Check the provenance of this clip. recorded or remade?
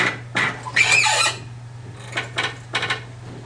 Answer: recorded